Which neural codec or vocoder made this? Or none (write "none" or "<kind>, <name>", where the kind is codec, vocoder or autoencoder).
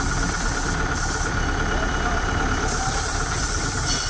vocoder, BigVGAN v2